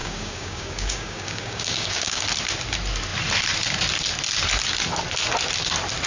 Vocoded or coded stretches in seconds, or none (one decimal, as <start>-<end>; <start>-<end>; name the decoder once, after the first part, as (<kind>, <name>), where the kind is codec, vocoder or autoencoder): 0.0-2.2 (codec, DAC)